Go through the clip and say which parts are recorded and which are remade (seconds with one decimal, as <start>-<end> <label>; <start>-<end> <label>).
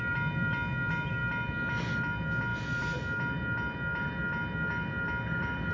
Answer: 0.0-5.7 recorded